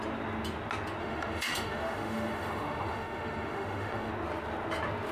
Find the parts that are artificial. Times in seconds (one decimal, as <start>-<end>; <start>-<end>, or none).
1.0-4.1